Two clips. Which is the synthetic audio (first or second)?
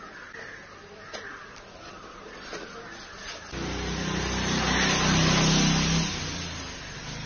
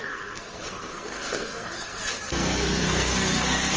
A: second